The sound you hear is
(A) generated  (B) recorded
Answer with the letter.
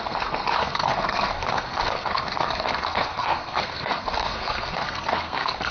A